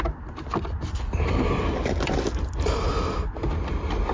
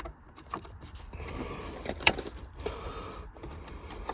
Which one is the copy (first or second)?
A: second